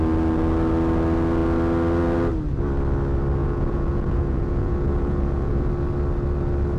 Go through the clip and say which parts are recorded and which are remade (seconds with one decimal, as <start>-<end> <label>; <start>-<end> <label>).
0.0-3.4 recorded; 3.4-5.7 remade; 5.7-6.8 recorded